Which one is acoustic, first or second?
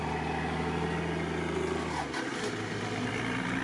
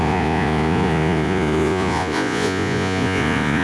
first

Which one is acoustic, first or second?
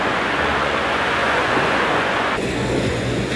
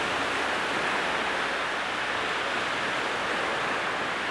second